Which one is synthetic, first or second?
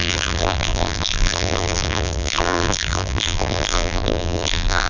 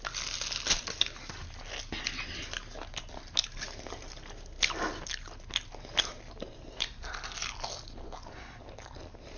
first